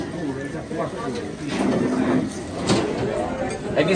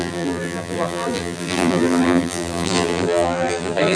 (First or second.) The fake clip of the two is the second